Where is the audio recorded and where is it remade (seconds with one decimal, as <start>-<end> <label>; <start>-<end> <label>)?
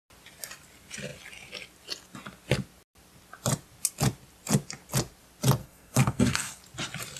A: 0.0-5.6 recorded; 5.6-6.6 remade; 6.6-7.2 recorded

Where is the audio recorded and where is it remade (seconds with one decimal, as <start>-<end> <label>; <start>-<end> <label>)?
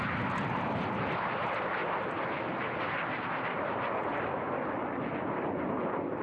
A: 0.0-6.2 recorded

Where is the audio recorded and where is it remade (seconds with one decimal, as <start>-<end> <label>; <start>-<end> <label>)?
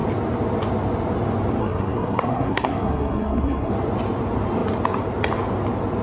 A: 0.0-1.6 recorded; 1.6-3.7 remade; 3.7-6.0 recorded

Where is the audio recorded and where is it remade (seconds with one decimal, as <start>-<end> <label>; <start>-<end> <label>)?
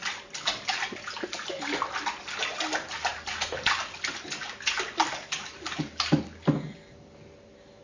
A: 0.0-7.8 recorded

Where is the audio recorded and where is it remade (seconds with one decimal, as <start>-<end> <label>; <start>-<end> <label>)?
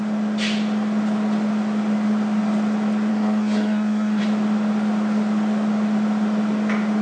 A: 0.0-3.1 recorded; 3.1-4.2 remade; 4.2-7.0 recorded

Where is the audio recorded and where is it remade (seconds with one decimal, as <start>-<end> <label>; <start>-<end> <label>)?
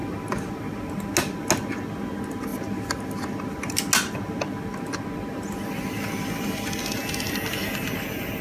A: 0.0-8.4 recorded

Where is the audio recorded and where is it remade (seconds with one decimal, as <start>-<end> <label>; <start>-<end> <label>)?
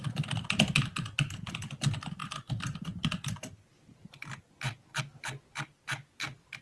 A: 0.0-6.6 recorded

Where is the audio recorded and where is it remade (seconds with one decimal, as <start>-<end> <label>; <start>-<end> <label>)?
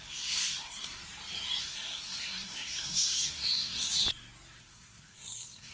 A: 0.0-1.0 remade; 1.0-1.6 recorded; 1.6-3.9 remade; 3.9-4.6 recorded; 4.6-5.7 remade